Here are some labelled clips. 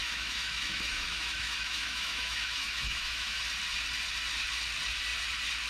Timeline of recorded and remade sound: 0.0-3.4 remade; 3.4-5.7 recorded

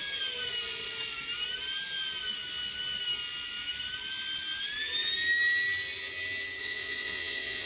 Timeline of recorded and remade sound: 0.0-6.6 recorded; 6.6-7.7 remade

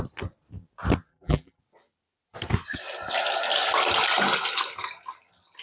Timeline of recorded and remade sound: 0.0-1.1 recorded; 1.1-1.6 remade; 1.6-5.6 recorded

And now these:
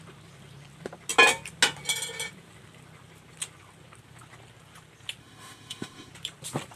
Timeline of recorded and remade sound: 0.0-5.2 recorded; 5.2-6.1 remade; 6.1-6.8 recorded

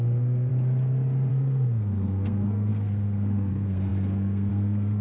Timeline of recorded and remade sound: 0.0-0.5 remade; 0.5-1.3 recorded; 1.3-5.0 remade

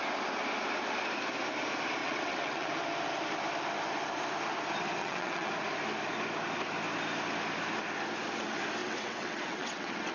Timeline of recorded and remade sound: 0.0-2.0 recorded; 2.0-2.7 remade; 2.7-5.0 recorded; 5.0-5.5 remade; 5.5-8.8 recorded; 8.8-10.1 remade

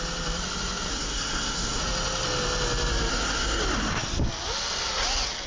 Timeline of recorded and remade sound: 0.0-0.9 recorded; 0.9-1.8 remade; 1.8-3.1 recorded; 3.1-3.6 remade; 3.6-5.5 recorded